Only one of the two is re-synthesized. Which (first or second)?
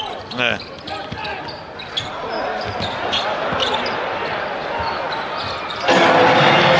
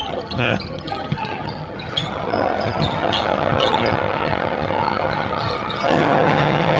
second